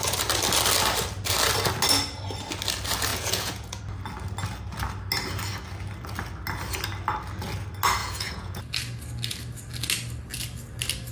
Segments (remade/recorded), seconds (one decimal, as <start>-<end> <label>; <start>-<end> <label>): 0.0-3.1 recorded; 3.1-3.8 remade; 3.8-8.0 recorded; 8.0-8.6 remade; 8.6-11.1 recorded

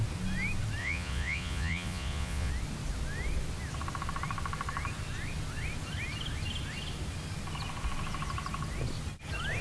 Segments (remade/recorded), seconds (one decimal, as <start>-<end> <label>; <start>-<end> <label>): 0.0-0.8 recorded; 0.8-2.5 remade; 2.5-9.6 recorded

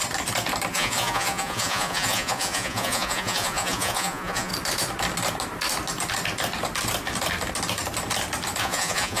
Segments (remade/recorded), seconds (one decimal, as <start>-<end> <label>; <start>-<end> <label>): 0.0-0.7 recorded; 0.7-4.5 remade; 4.5-8.6 recorded; 8.6-9.2 remade

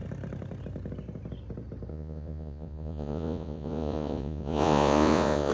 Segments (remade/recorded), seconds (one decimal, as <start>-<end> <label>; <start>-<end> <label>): 0.0-1.9 recorded; 1.9-5.5 remade